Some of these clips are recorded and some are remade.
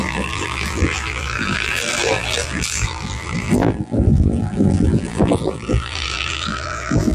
remade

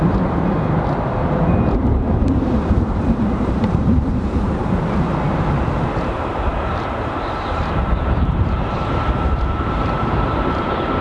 remade